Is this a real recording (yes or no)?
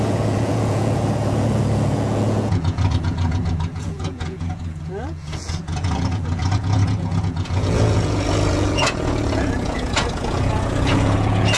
no